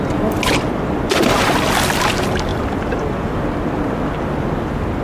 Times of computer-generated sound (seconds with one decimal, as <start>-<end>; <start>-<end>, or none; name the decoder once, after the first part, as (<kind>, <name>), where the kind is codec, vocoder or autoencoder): 2.5-3.4 (vocoder, BigVGAN v2)